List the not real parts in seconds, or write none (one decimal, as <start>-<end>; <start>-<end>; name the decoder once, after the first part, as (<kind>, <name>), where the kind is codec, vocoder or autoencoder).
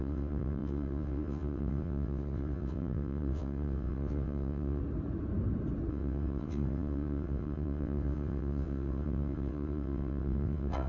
0.0-4.8 (vocoder, WaveNeXt); 5.9-10.9